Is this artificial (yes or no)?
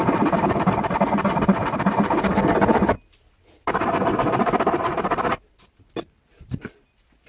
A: yes